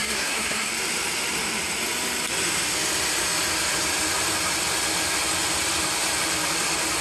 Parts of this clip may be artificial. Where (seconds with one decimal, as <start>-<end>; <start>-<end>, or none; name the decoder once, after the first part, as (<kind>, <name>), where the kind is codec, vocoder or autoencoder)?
0.0-0.7 (codec, SNAC)